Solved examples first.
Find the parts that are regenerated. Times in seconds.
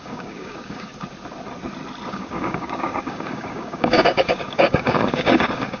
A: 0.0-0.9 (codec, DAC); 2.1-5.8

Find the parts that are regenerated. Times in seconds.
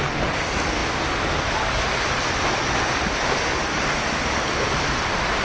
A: 3.5-4.2 (vocoder, BigVGAN v2)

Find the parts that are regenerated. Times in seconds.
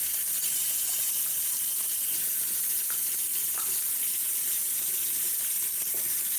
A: 3.3-4.7 (vocoder, BigVGAN v2)